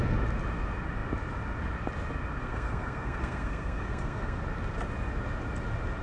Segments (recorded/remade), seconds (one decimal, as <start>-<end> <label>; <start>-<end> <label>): 0.0-2.4 recorded; 2.4-4.4 remade; 4.4-6.0 recorded